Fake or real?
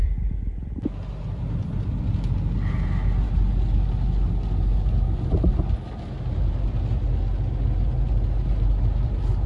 real